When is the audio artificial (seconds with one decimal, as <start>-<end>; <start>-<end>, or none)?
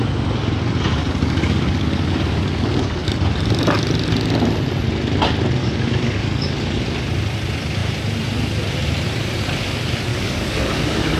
1.0-3.1; 5.6-6.8; 10.1-11.2